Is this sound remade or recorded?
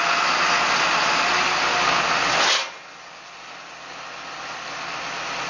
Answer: recorded